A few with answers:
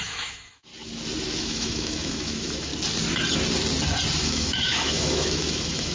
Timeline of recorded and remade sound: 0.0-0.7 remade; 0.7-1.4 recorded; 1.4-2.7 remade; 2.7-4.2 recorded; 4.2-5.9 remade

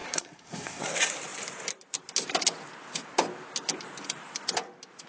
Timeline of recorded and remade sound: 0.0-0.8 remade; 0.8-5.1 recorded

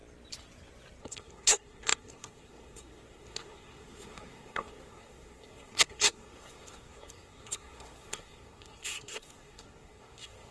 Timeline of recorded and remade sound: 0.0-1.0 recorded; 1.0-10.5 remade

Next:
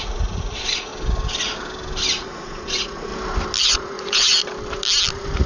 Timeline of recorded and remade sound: 0.0-0.9 remade; 0.9-2.2 recorded; 2.2-3.1 remade; 3.1-3.6 recorded; 3.6-4.4 remade; 4.4-5.1 recorded; 5.1-5.5 remade

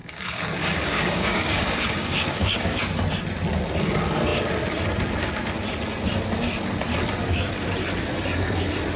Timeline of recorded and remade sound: 0.0-2.8 remade; 2.8-9.0 recorded

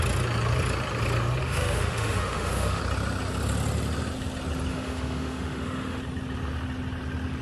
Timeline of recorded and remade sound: 0.0-1.4 recorded; 1.4-2.8 remade; 2.8-4.7 recorded; 4.7-6.0 remade; 6.0-7.4 recorded

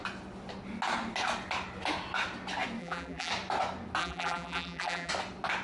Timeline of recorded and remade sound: 0.0-2.8 recorded; 2.8-3.3 remade; 3.3-4.0 recorded; 4.0-5.1 remade; 5.1-5.6 recorded